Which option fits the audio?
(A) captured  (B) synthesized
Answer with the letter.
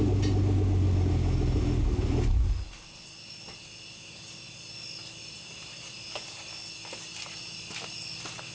A